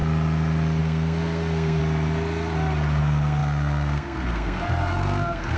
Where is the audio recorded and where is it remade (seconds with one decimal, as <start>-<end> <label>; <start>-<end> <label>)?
0.0-0.8 recorded; 0.8-1.8 remade; 1.8-3.0 recorded; 3.0-5.6 remade

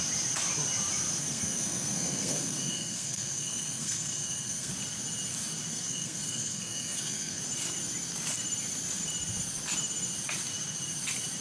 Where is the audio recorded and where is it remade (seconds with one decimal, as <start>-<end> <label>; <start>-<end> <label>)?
0.0-1.2 recorded; 1.2-4.7 remade; 4.7-5.7 recorded; 5.7-7.4 remade; 7.4-11.4 recorded

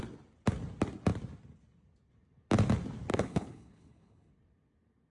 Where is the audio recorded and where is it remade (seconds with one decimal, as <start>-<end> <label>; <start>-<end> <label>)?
0.0-3.1 recorded; 3.1-4.3 remade; 4.3-5.1 recorded

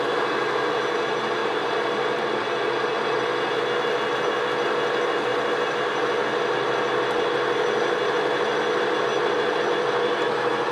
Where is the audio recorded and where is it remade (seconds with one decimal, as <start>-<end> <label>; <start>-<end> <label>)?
0.0-1.4 recorded; 1.4-2.5 remade; 2.5-10.7 recorded

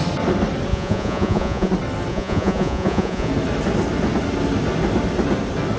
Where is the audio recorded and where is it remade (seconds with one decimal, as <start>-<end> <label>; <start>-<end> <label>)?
0.0-0.7 recorded; 0.7-1.7 remade; 1.7-2.1 recorded; 2.1-3.3 remade; 3.3-5.8 recorded

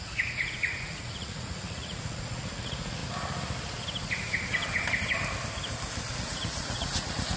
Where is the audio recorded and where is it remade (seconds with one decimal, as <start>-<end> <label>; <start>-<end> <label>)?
0.0-3.0 remade; 3.0-6.1 recorded; 6.1-7.4 remade